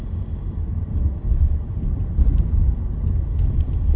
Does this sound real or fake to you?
real